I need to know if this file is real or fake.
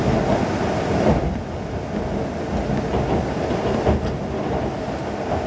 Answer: real